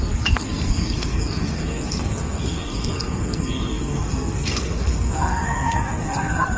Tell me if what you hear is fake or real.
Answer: fake